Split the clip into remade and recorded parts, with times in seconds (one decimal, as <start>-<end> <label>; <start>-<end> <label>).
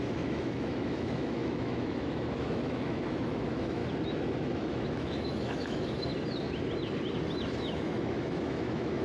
0.0-3.8 remade; 3.8-4.4 recorded; 4.4-6.1 remade; 6.1-7.6 recorded; 7.6-9.0 remade